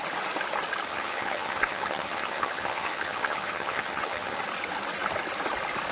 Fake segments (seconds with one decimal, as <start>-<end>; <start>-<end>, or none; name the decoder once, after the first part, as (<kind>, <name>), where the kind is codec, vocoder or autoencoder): 0.9-4.4 (vocoder, HiFi-GAN)